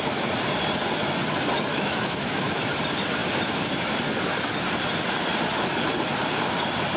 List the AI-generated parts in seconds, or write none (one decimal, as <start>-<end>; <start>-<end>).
1.7-2.7